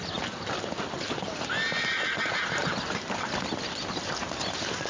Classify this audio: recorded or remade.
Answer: recorded